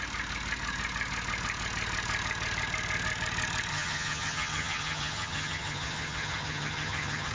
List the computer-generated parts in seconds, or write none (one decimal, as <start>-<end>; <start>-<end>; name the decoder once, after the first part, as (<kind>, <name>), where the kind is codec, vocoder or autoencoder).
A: 3.7-7.3 (vocoder, HiFi-GAN)